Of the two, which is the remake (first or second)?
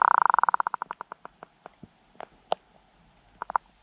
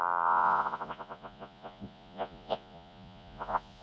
second